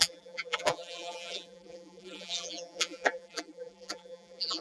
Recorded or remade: remade